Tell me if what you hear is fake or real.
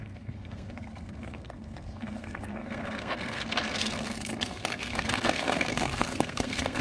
fake